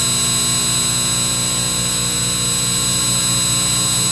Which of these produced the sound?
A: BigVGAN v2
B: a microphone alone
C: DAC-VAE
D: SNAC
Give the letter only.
B